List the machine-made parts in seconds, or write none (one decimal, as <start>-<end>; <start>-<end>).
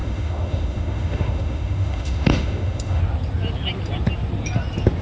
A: 0.0-3.0